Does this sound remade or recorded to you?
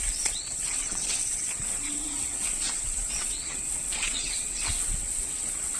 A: remade